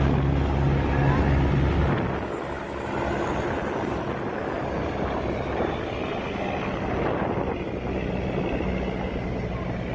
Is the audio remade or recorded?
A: recorded